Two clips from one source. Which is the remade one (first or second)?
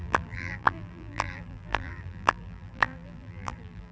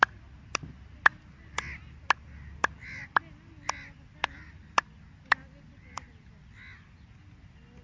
first